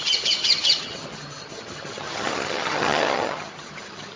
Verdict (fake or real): fake